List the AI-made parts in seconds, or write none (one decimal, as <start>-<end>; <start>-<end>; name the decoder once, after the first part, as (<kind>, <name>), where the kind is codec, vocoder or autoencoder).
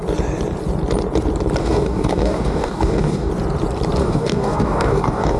1.6-3.3 (codec, DAC); 4.0-5.4